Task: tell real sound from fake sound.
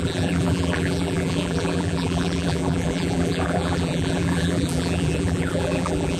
fake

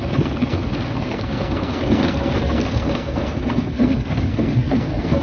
fake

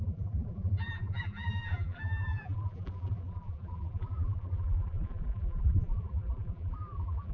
fake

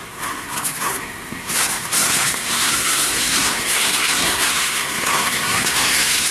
fake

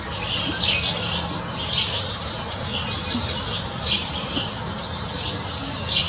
real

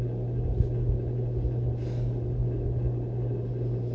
real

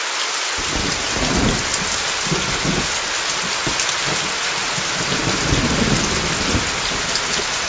real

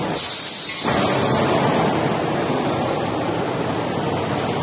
real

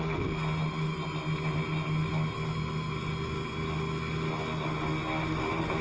real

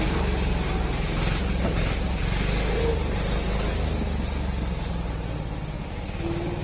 real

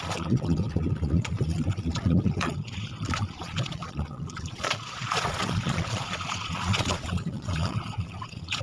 fake